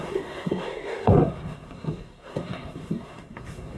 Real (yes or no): no